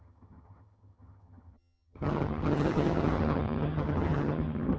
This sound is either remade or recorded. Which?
remade